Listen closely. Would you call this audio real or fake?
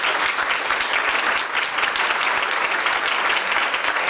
real